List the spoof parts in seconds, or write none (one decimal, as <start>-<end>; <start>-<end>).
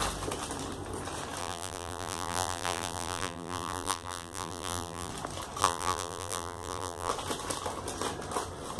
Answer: 1.4-5.1; 5.6-7.1